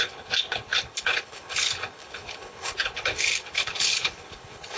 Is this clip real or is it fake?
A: fake